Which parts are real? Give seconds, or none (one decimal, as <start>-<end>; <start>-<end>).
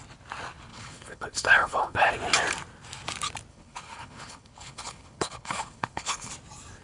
0.0-0.7; 2.1-3.5; 6.3-6.8